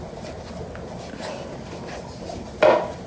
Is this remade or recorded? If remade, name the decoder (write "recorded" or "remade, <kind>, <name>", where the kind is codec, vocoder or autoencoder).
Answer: recorded